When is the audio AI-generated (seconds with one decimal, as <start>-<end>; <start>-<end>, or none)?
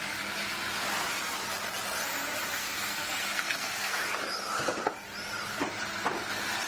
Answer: 2.5-4.0